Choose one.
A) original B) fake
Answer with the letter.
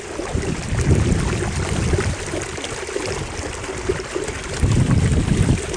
B